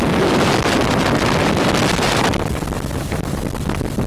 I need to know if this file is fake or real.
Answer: fake